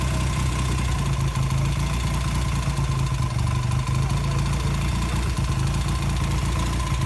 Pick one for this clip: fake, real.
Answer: real